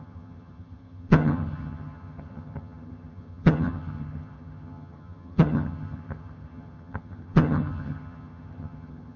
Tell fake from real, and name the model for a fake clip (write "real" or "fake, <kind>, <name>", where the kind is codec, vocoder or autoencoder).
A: fake, vocoder, HiFi-GAN